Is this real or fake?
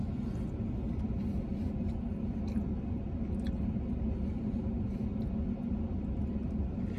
real